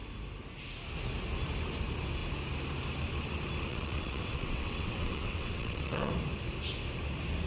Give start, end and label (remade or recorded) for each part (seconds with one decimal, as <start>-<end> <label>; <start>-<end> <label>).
0.0-3.7 recorded; 3.7-6.1 remade; 6.1-7.5 recorded